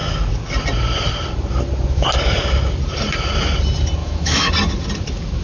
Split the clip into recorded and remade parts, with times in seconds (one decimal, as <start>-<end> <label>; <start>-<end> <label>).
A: 0.0-4.0 recorded; 4.0-4.5 remade; 4.5-5.4 recorded